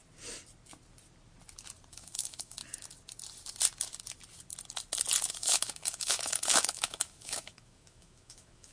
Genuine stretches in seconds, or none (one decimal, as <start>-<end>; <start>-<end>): 0.0-1.9; 2.6-5.2